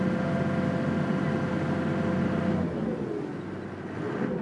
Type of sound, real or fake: real